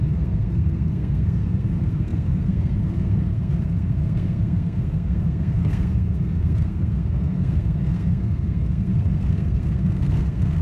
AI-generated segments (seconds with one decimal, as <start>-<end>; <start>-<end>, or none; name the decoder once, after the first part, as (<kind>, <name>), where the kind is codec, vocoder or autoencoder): 0.0-10.6 (codec, SNAC)